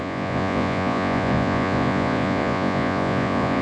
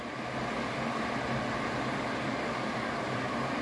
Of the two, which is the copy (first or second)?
first